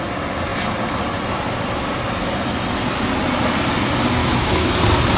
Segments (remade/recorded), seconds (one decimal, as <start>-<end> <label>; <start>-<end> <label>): 0.0-4.2 recorded; 4.2-4.7 remade; 4.7-5.2 recorded